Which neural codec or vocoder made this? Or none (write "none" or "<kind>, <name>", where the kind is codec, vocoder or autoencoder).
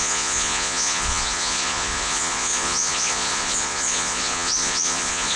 vocoder, Vocos